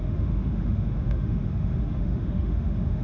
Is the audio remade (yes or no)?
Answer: yes